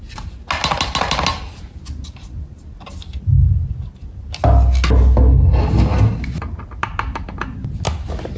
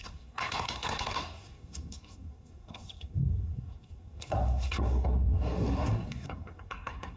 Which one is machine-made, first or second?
second